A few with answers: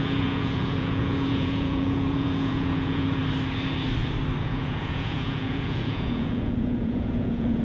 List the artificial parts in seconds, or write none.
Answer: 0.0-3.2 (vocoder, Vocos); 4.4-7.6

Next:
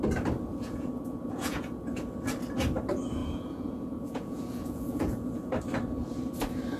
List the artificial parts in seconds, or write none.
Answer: 0.5-1.8 (vocoder, Vocos); 3.2-5.5

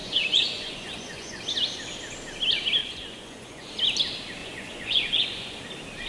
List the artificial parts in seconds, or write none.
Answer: 0.0-1.4 (vocoder, Vocos); 2.8-3.7; 4.4-5.6